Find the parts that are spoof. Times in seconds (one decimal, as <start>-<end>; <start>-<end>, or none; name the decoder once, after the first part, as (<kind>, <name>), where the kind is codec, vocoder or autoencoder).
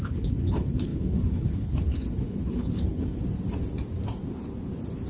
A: 0.0-3.2 (codec, HILCodec)